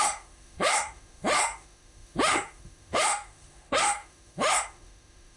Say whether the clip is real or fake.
fake